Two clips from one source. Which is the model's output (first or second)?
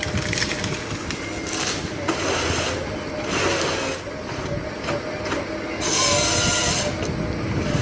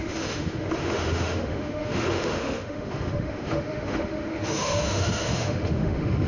second